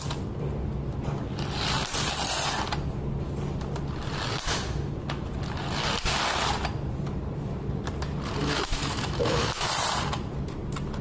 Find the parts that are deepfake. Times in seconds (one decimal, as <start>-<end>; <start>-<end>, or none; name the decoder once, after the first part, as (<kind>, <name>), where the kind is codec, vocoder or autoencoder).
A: 8.4-9.7 (autoencoder, DAC-VAE)